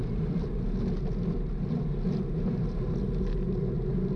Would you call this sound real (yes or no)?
yes